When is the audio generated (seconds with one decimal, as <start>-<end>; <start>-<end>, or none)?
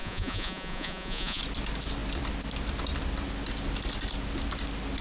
0.0-1.4